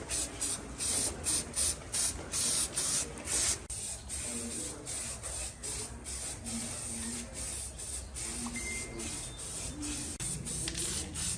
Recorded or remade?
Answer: recorded